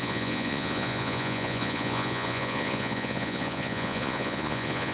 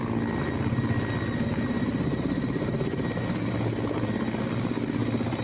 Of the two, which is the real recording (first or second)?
second